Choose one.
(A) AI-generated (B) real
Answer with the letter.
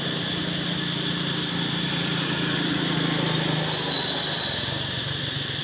B